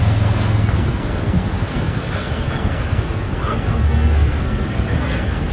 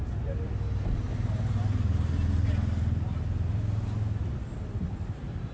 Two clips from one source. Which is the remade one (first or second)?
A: first